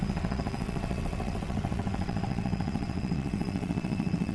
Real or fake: fake